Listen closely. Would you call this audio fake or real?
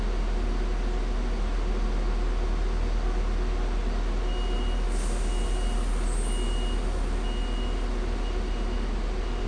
real